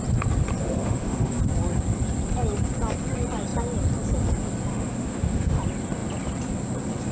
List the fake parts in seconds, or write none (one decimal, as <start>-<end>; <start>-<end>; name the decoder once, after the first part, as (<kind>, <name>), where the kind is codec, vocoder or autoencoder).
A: 0.6-1.4 (autoencoder, DAC-VAE); 4.7-5.6